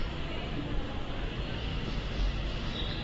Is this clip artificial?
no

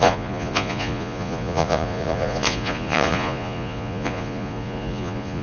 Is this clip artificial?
yes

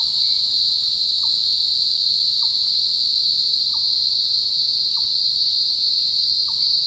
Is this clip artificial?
no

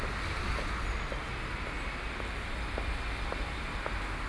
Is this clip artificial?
no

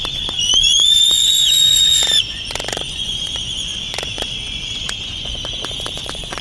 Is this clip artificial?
yes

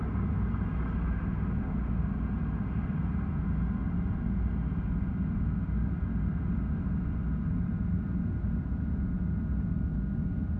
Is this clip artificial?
no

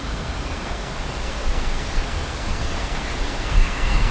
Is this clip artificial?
yes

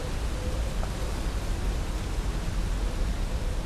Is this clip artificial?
no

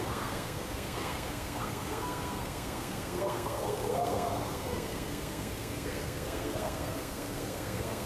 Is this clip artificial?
yes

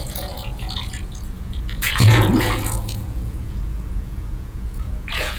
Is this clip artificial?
yes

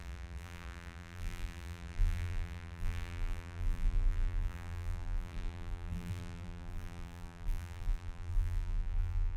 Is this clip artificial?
yes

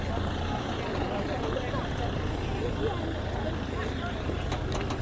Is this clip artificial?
no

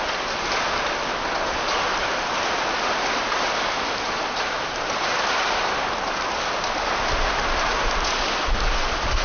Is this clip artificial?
no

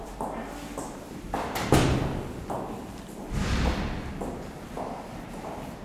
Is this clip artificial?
no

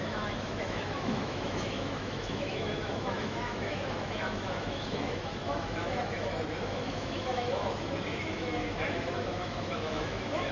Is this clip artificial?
yes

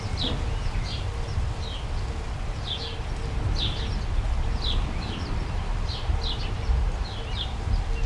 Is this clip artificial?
no